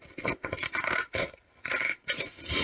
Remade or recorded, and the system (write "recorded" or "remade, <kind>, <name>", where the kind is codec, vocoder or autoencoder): remade, vocoder, BigVGAN v2